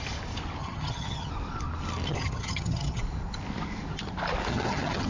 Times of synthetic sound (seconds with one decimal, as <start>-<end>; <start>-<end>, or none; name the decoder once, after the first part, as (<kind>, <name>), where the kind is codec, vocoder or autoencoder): 0.6-1.3 (vocoder, HiFi-GAN); 2.1-3.0; 4.5-5.1